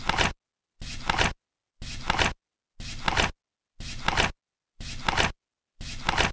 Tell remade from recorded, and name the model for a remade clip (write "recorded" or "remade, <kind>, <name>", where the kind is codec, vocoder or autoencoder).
recorded